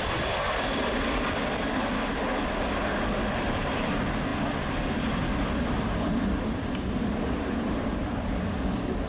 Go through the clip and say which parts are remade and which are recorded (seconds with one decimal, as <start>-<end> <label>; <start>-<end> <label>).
0.0-9.1 recorded

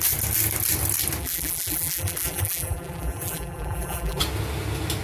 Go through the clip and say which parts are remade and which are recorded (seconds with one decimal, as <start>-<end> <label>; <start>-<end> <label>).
0.0-1.2 recorded; 1.2-4.2 remade; 4.2-5.0 recorded

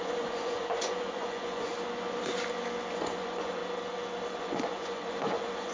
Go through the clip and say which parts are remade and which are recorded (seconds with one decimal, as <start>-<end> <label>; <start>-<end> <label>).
0.0-1.7 remade; 1.7-2.9 recorded; 2.9-3.6 remade; 3.6-4.4 recorded; 4.4-5.7 remade

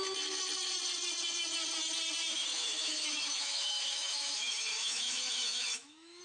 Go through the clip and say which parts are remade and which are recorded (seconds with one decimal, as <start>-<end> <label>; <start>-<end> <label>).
0.0-2.3 recorded; 2.3-6.2 remade

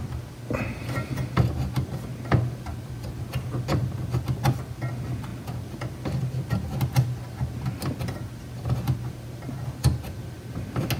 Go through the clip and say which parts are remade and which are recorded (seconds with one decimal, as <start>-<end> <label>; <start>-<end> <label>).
0.0-11.0 recorded